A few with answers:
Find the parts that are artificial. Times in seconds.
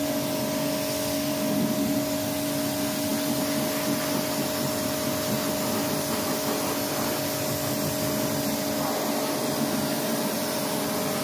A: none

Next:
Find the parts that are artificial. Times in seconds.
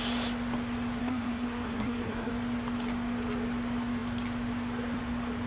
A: 1.0-2.3 (codec, SNAC)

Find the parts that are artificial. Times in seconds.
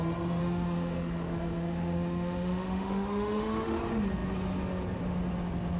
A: 0.4-3.8 (autoencoder, DAC-VAE)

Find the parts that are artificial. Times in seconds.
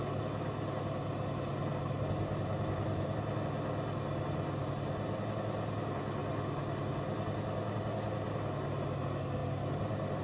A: none